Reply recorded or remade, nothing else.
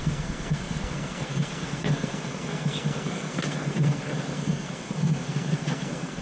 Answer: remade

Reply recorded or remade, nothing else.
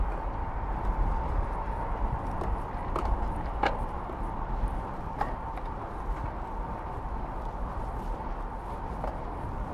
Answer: recorded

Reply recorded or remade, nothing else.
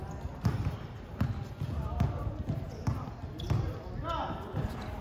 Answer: recorded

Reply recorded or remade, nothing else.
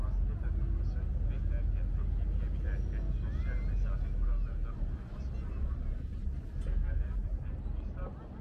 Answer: recorded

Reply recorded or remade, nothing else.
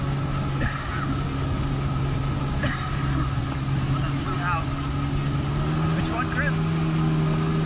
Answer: recorded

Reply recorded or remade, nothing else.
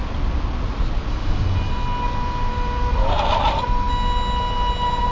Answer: recorded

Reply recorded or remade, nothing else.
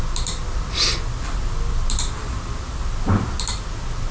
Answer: recorded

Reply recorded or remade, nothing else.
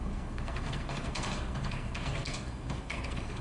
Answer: remade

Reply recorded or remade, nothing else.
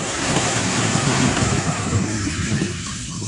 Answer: remade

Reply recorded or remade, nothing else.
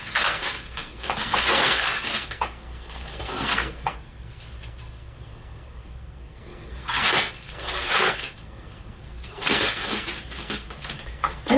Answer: remade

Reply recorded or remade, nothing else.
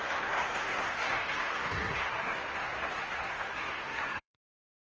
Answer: remade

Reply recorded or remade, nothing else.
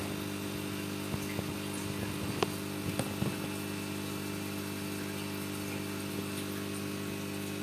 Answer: recorded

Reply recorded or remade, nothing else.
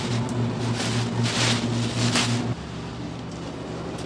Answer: recorded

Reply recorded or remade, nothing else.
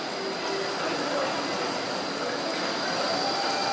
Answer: recorded